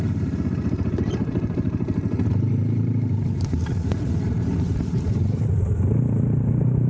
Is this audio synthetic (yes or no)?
yes